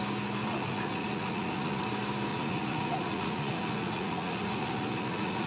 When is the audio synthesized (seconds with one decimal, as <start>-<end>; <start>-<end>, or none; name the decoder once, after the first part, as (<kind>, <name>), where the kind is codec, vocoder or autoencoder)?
0.4-1.8 (vocoder, Vocos); 2.3-5.5